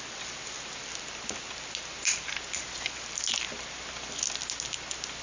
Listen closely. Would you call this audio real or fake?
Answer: real